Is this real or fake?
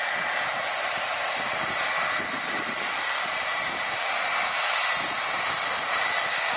real